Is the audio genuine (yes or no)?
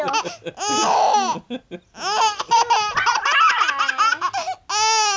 yes